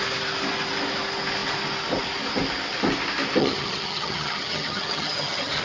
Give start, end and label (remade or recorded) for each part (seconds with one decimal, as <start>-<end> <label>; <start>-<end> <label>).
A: 0.0-3.4 recorded; 3.4-5.6 remade